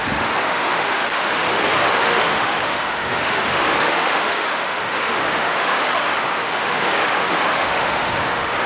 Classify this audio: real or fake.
fake